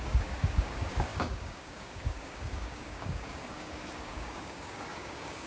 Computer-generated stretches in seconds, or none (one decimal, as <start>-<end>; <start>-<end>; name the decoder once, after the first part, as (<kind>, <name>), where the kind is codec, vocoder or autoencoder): 0.0-5.5 (codec, DAC)